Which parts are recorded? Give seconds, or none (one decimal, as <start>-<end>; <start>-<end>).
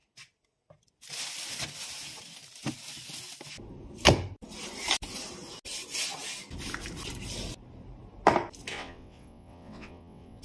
0.0-8.7